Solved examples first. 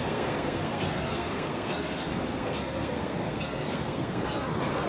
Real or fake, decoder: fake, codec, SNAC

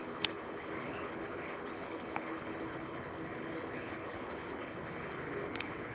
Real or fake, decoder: fake, codec, HILCodec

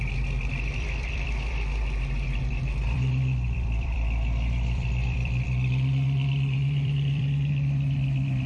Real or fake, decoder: fake, vocoder, BigVGAN v2